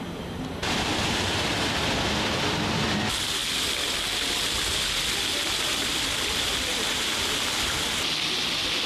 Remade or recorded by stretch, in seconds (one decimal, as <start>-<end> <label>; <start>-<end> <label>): 0.0-8.9 recorded